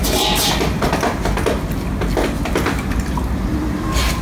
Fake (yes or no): no